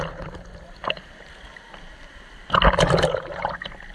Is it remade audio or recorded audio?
recorded